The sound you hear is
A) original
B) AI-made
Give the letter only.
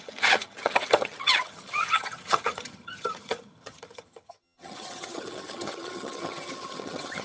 B